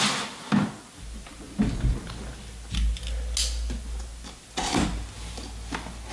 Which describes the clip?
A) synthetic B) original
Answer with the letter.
B